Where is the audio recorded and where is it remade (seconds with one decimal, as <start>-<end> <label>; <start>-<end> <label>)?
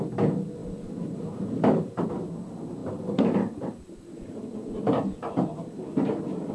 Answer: 0.0-0.6 recorded; 0.6-2.1 remade; 2.1-2.8 recorded; 2.8-6.5 remade